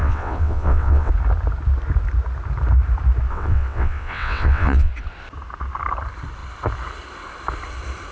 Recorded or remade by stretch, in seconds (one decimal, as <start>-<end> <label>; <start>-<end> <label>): 0.0-1.1 remade; 1.1-3.3 recorded; 3.3-4.9 remade; 4.9-8.1 recorded